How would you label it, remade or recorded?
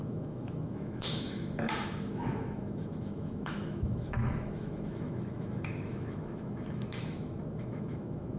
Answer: remade